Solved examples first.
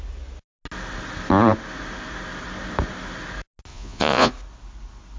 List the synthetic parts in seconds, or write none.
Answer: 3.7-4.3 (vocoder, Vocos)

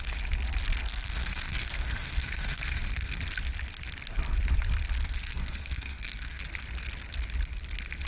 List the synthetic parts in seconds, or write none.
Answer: 0.9-3.2 (codec, SNAC); 5.0-6.4

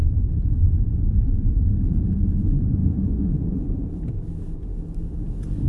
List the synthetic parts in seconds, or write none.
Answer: 0.0-2.8 (vocoder, BigVGAN v2)

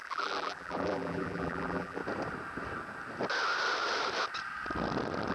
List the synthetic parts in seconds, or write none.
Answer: 0.0-2.0 (vocoder, BigVGAN v2)

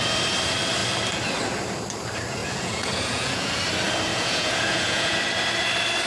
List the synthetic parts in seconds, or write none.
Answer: 2.4-3.5 (vocoder, Vocos); 4.1-5.2